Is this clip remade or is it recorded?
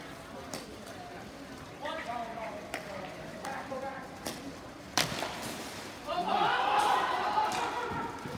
remade